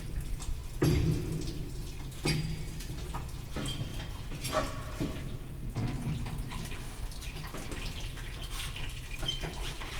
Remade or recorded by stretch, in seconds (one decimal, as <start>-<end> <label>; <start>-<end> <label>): 0.0-8.8 recorded; 8.8-10.0 remade